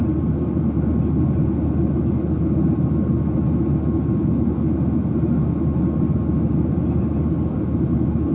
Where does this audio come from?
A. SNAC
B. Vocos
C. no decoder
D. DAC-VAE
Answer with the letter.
C